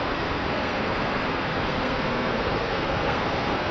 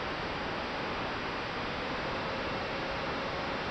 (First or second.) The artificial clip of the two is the first